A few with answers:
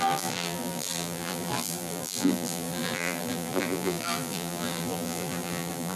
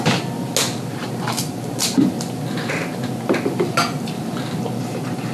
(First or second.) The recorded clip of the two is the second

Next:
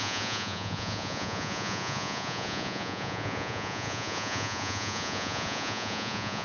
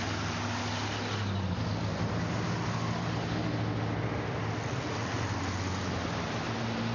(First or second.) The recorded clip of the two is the second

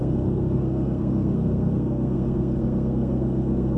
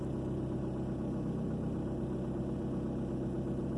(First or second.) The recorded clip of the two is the second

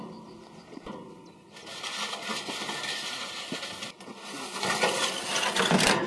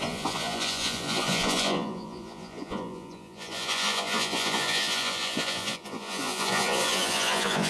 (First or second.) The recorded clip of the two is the first